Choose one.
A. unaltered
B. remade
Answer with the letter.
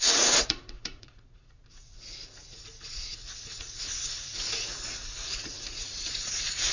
B